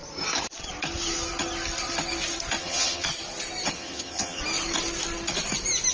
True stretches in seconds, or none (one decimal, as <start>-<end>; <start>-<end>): 0.0-2.6; 3.1-3.7; 4.4-5.9